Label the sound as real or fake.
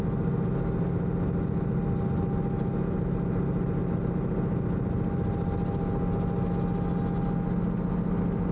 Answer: real